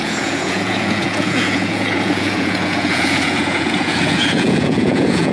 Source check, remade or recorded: remade